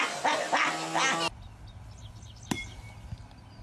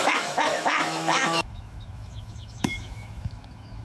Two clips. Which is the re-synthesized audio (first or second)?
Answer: second